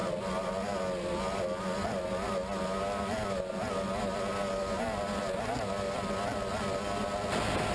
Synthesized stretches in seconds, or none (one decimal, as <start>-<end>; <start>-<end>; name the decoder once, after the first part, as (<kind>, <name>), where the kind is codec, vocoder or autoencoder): none